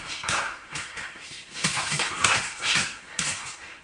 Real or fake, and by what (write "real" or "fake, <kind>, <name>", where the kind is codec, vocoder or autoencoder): fake, codec, SNAC